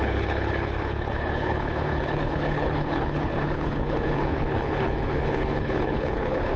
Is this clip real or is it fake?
fake